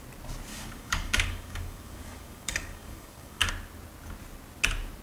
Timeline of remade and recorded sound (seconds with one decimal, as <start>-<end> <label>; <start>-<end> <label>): 0.0-0.5 recorded; 0.5-3.5 remade; 3.5-5.0 recorded